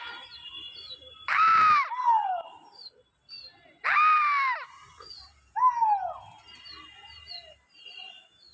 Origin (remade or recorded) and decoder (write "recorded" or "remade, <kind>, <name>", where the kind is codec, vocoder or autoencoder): recorded